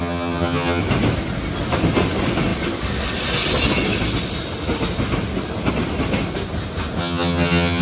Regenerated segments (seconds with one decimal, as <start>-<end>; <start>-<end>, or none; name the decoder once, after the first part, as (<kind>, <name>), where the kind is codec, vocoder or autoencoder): 0.0-0.8 (vocoder, HiFi-GAN); 7.0-7.8